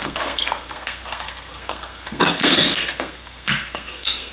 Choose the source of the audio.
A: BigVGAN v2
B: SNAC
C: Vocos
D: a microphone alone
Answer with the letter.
B